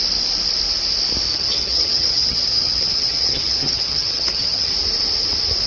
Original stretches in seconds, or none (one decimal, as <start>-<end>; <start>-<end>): 0.0-1.3; 4.7-5.7